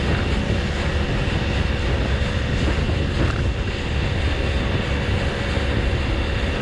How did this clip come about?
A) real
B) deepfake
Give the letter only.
A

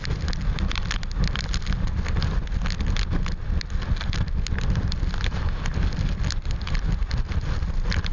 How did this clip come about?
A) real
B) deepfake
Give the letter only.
A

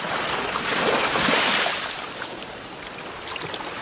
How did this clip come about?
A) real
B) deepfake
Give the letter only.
A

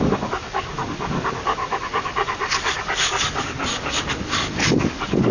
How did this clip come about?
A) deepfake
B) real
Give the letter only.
A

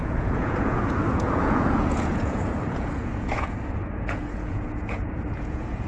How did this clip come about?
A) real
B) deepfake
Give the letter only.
B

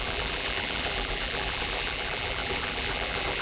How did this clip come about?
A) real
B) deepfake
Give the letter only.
B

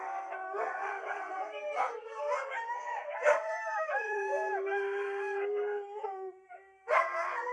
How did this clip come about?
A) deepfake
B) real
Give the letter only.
A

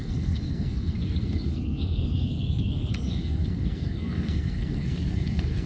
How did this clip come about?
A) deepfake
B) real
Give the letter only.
A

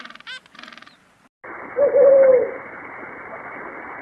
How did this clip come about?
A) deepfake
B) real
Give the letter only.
B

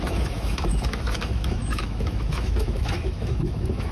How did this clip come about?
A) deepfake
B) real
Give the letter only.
A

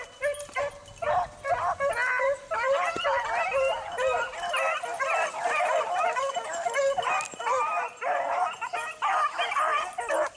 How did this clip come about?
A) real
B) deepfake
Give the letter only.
A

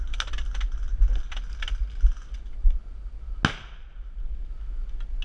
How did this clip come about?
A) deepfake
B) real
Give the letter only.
B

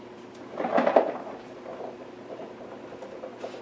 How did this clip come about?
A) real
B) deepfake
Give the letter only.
A